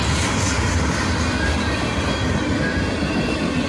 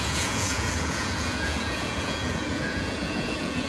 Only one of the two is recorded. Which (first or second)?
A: first